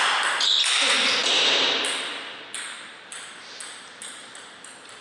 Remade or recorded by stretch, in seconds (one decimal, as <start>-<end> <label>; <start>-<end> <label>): 0.0-5.0 recorded